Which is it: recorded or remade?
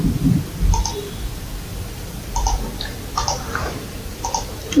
remade